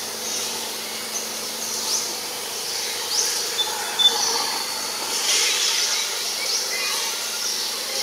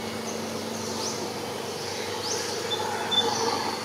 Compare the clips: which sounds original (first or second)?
second